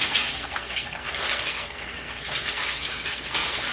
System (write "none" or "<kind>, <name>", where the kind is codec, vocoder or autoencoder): codec, SNAC